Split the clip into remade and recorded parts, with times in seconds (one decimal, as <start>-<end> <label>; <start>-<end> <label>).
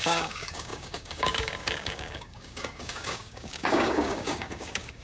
0.0-5.0 remade